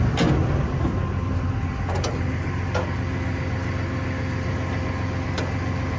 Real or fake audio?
real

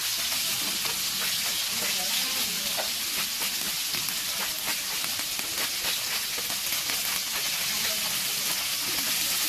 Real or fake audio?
real